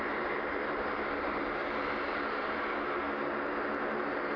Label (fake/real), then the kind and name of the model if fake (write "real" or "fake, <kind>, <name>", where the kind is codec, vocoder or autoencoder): real